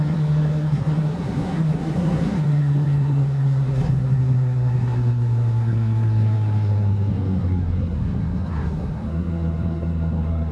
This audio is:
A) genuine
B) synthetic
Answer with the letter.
B